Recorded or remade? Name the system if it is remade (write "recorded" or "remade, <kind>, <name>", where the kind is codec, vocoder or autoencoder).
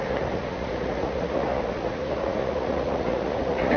remade, vocoder, Vocos